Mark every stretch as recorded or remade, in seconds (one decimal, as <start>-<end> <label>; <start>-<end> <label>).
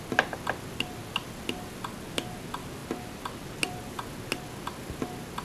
0.0-5.4 recorded